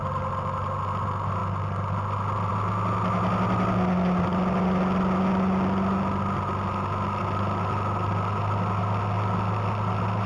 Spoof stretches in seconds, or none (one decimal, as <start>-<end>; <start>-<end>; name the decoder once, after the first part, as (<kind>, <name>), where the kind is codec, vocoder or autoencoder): none

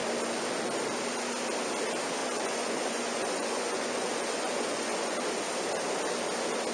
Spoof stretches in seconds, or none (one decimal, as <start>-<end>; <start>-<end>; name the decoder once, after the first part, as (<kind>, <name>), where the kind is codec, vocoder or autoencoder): 2.2-5.1 (vocoder, Vocos)

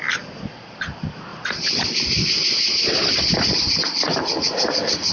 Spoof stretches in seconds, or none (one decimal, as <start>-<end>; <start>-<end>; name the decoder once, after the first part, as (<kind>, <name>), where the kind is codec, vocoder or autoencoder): 1.3-4.2 (vocoder, BigVGAN v2)

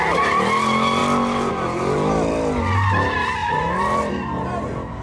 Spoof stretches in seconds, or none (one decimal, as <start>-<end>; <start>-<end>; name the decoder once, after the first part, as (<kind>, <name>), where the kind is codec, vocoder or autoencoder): 3.4-4.1 (vocoder, BigVGAN v2)

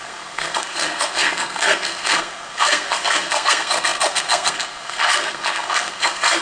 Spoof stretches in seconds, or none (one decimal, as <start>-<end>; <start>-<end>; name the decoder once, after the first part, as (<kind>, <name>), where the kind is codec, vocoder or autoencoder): 0.0-6.4 (codec, SNAC)